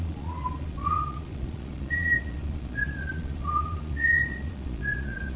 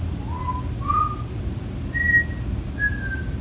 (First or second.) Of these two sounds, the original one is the second